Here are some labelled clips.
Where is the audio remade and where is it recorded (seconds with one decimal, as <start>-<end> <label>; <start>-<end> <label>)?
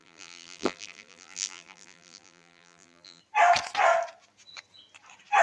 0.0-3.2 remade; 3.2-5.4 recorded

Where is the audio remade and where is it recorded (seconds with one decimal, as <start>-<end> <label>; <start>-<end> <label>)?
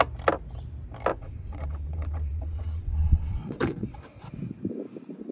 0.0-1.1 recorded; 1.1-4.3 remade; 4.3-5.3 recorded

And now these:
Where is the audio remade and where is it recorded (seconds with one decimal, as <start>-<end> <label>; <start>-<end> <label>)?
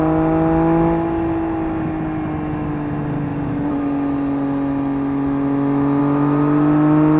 0.0-7.2 recorded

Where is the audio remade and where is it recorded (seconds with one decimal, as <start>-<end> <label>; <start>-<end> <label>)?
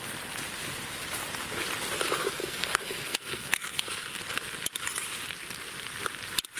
0.0-2.4 recorded; 2.4-4.2 remade; 4.2-6.6 recorded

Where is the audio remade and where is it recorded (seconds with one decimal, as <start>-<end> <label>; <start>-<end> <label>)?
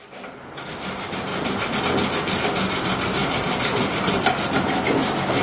0.0-1.3 recorded; 1.3-1.8 remade; 1.8-3.2 recorded; 3.2-4.3 remade; 4.3-5.4 recorded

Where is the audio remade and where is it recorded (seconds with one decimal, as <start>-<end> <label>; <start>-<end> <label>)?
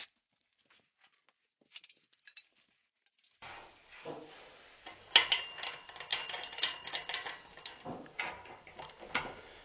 0.0-6.1 recorded; 6.1-6.9 remade; 6.9-9.6 recorded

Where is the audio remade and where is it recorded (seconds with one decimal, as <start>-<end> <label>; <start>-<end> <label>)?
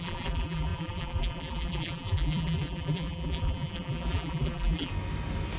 0.0-4.9 remade; 4.9-5.6 recorded